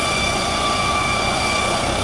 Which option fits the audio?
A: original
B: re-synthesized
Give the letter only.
B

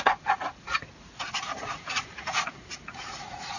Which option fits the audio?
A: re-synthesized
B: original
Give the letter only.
A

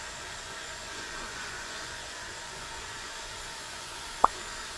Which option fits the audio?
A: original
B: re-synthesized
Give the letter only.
B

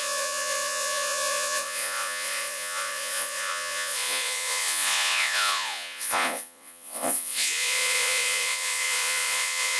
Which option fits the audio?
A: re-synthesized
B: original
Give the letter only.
A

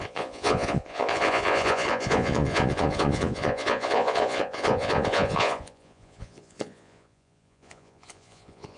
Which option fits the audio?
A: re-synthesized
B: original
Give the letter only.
A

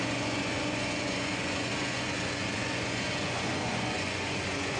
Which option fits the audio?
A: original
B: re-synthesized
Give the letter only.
B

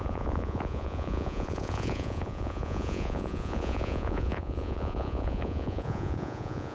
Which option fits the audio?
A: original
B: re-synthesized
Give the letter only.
B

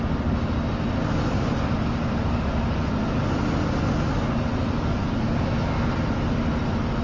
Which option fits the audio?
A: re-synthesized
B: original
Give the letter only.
B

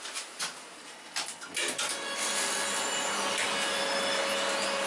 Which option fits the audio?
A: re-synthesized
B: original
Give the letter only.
B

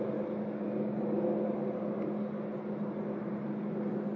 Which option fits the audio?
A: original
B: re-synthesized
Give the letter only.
A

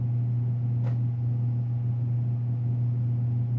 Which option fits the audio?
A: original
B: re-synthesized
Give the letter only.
A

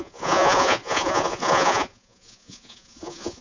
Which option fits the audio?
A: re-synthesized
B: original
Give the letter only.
A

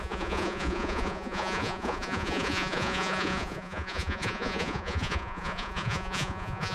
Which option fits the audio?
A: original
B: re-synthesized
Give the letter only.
B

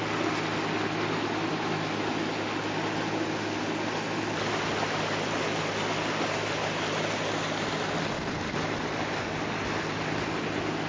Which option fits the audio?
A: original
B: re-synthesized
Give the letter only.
A